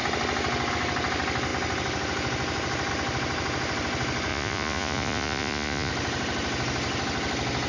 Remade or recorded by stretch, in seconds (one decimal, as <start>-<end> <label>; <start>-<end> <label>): 0.0-4.3 recorded; 4.3-5.9 remade; 5.9-7.7 recorded